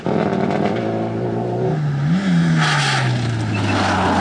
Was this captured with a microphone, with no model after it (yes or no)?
yes